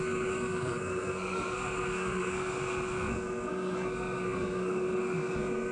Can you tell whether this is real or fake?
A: fake